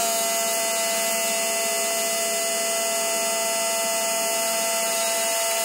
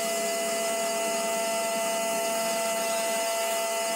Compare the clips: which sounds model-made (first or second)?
second